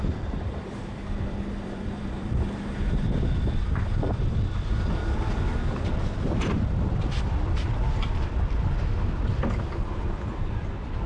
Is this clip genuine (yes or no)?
no